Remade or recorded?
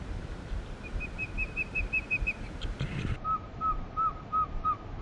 remade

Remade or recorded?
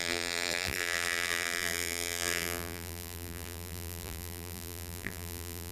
remade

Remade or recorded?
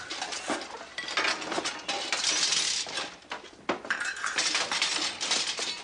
recorded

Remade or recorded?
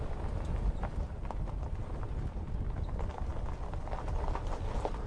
recorded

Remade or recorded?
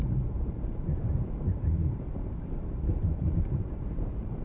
remade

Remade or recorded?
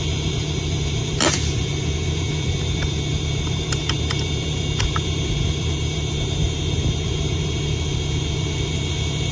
remade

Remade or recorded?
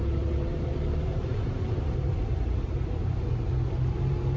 remade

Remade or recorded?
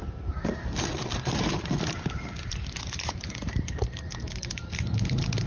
remade